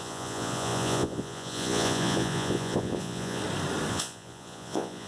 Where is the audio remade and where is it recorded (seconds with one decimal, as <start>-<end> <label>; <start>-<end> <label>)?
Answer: 0.0-3.4 remade; 3.4-3.9 recorded; 3.9-5.1 remade